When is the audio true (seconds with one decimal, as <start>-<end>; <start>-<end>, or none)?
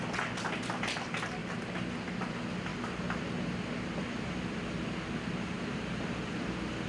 0.0-6.9